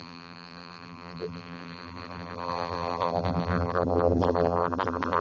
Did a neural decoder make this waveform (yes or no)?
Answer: yes